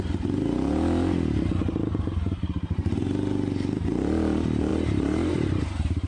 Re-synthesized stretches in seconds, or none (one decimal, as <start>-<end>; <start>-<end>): 4.7-6.1